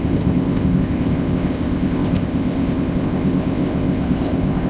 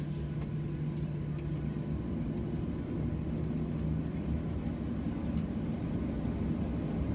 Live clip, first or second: second